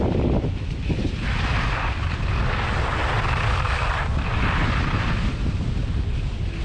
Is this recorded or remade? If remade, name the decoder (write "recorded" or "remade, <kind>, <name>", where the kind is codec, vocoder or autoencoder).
recorded